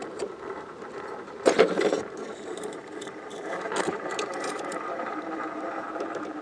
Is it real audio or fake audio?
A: fake